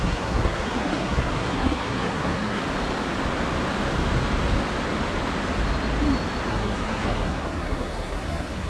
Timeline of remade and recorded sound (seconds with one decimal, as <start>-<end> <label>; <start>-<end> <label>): 0.0-2.6 remade; 2.6-6.5 recorded; 6.5-8.7 remade